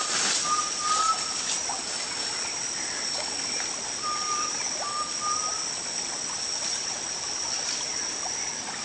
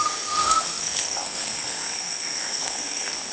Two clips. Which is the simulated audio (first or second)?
second